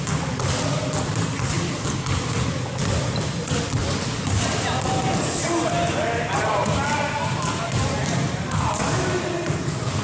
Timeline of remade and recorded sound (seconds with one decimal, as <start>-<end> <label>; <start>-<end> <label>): 0.0-10.0 recorded